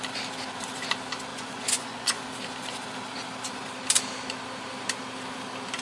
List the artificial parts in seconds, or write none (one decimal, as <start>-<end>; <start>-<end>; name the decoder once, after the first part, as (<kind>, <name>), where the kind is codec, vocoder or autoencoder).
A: 1.3-2.2 (vocoder, Vocos)